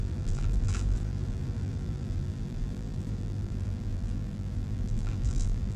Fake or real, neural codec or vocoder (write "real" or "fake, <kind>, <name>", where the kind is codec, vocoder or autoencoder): fake, vocoder, BigVGAN v2